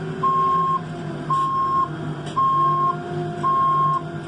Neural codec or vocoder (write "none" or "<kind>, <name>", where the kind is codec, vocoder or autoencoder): none